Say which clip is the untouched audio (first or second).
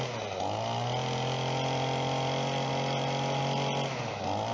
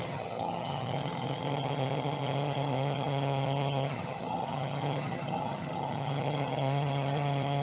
first